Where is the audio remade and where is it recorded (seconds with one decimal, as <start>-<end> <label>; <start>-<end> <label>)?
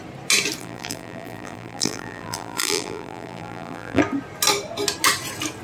0.0-0.6 recorded; 0.6-4.0 remade; 4.0-5.6 recorded